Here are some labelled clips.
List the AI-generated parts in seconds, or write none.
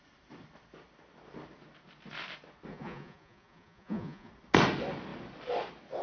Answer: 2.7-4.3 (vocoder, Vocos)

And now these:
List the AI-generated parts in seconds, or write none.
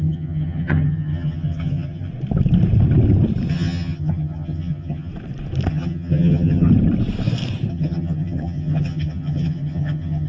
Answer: 0.0-2.1 (vocoder, HiFi-GAN); 3.5-5.1; 5.7-6.7; 7.7-10.3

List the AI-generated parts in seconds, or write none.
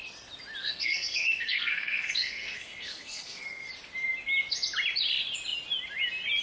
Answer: 0.6-3.7 (codec, SNAC)